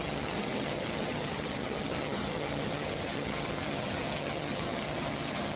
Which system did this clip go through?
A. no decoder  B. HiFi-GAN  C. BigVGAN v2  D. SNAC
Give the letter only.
B